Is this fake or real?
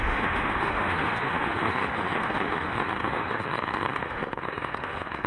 fake